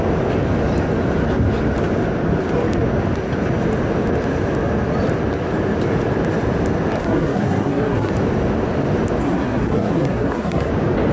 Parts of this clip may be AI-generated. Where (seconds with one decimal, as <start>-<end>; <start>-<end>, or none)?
7.0-8.1; 9.2-10.7